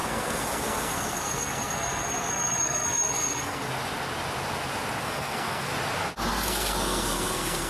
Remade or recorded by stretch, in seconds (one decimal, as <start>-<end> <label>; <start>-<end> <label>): 0.0-3.6 remade; 3.6-5.0 recorded; 5.0-5.7 remade; 5.7-6.3 recorded; 6.3-7.7 remade